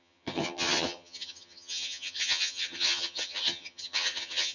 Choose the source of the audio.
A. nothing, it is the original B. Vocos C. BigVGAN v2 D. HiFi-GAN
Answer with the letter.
D